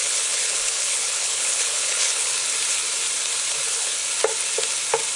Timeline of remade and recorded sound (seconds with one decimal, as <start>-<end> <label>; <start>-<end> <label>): 0.0-2.4 remade; 2.4-3.5 recorded; 3.5-4.0 remade; 4.0-5.2 recorded

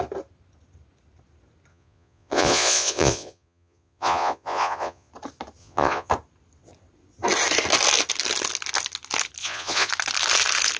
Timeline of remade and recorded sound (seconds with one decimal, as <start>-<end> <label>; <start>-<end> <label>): 0.0-1.7 recorded; 1.7-5.1 remade; 5.1-5.6 recorded; 5.6-6.1 remade; 6.1-9.4 recorded; 9.4-9.9 remade; 9.9-10.8 recorded

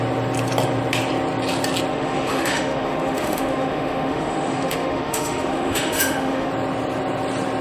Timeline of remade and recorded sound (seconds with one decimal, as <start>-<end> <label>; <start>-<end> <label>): 0.0-1.9 recorded; 1.9-6.5 remade; 6.5-7.6 recorded

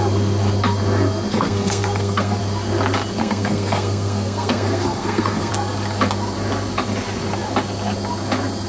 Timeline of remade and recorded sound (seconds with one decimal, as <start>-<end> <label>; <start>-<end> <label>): 0.0-1.3 recorded; 1.3-2.4 remade; 2.4-3.2 recorded; 3.2-5.5 remade; 5.5-8.7 recorded